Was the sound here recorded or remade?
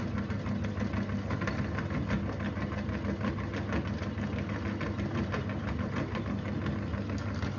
recorded